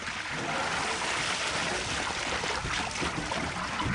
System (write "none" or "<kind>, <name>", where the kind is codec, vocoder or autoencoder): none